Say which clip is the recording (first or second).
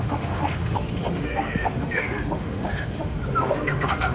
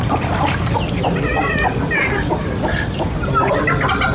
second